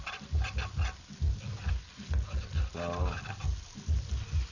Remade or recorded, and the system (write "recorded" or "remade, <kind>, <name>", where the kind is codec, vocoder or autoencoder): recorded